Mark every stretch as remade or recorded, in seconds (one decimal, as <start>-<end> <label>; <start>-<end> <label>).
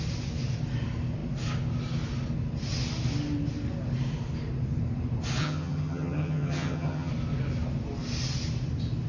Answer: 0.0-5.4 recorded; 5.4-7.1 remade; 7.1-9.1 recorded